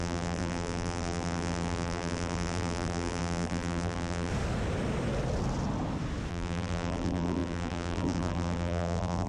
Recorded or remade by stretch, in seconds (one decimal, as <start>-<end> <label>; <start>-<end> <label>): 0.0-4.3 remade; 4.3-6.3 recorded; 6.3-9.3 remade